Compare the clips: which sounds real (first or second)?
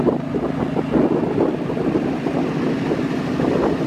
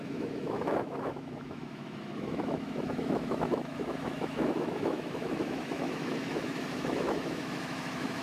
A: first